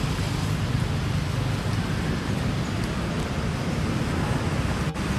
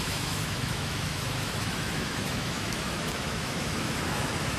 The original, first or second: first